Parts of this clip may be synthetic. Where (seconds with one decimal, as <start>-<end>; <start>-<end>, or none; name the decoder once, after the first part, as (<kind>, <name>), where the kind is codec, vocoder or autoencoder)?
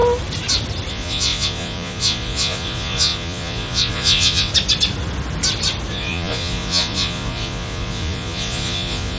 0.9-4.5 (vocoder, Vocos); 5.9-9.2